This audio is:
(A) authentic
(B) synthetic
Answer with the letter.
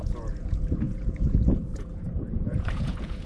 B